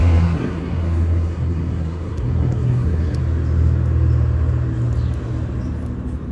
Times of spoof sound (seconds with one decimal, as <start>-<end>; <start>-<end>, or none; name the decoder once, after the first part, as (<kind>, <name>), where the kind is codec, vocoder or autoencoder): 0.0-3.2 (codec, SNAC)